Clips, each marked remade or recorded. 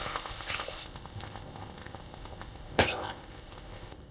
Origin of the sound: remade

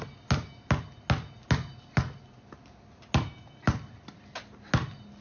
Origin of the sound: recorded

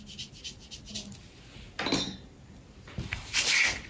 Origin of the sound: recorded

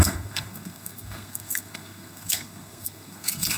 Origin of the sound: remade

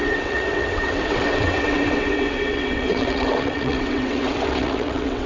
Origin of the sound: remade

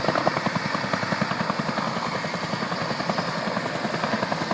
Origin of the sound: recorded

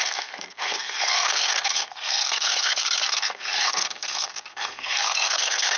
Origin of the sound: remade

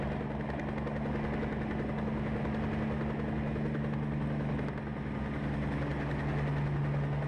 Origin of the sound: recorded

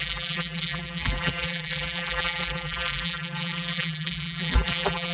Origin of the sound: remade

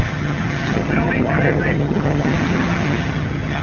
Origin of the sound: remade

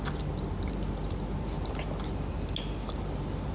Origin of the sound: recorded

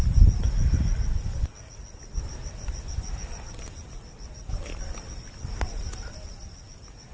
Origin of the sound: recorded